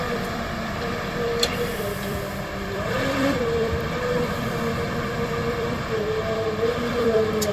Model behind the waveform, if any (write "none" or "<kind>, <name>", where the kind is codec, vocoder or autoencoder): vocoder, BigVGAN v2